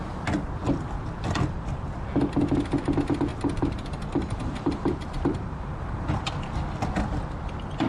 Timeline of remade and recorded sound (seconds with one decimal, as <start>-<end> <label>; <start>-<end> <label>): 0.0-3.3 recorded; 3.3-6.3 remade; 6.3-7.9 recorded